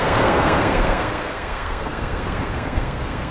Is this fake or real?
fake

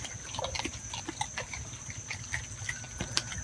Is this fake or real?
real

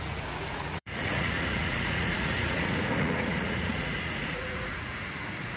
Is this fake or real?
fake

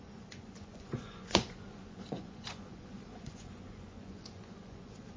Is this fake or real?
fake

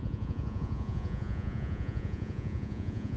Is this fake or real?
fake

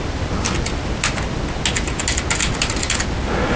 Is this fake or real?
real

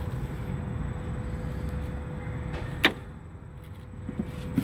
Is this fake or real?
real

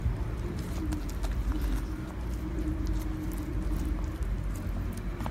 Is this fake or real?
real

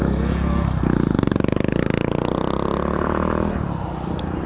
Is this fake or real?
real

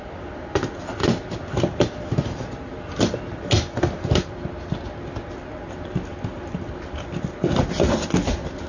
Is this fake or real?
real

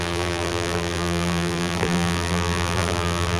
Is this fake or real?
fake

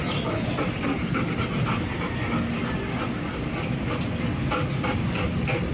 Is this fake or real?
real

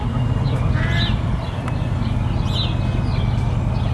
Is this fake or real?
real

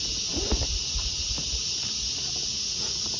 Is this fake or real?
real